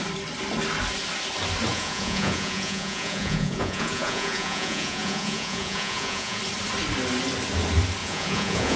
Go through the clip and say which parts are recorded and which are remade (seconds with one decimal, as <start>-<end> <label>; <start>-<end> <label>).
0.0-1.7 recorded; 1.7-6.4 remade; 6.4-8.0 recorded; 8.0-8.8 remade